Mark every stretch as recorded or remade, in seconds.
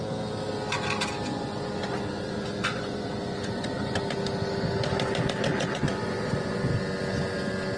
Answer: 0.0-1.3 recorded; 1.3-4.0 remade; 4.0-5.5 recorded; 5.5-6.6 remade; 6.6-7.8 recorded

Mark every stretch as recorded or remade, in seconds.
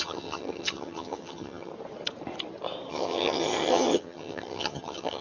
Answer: 0.0-1.7 remade; 1.7-2.9 recorded; 2.9-5.2 remade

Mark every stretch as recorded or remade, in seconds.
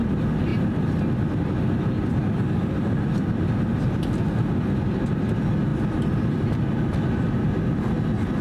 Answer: 0.0-8.4 recorded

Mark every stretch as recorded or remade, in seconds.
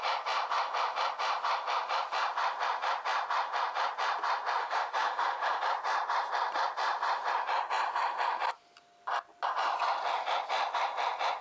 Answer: 0.0-4.6 recorded; 4.6-5.6 remade; 5.6-11.4 recorded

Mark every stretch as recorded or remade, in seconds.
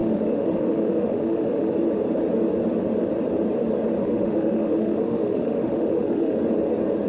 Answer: 0.0-1.7 remade; 1.7-4.0 recorded; 4.0-6.4 remade; 6.4-7.1 recorded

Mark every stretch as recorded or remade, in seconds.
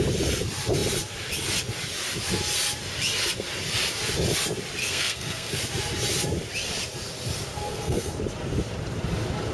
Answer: 0.0-4.8 recorded; 4.8-5.6 remade; 5.6-7.5 recorded; 7.5-8.1 remade; 8.1-9.5 recorded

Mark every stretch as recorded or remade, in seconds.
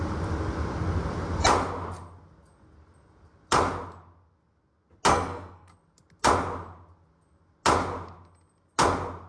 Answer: 0.0-5.1 recorded; 5.1-5.7 remade; 5.7-9.3 recorded